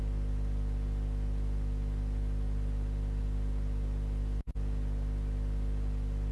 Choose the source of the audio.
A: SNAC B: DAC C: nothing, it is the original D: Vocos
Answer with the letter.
C